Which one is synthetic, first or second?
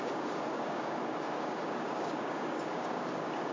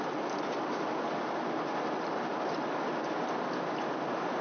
first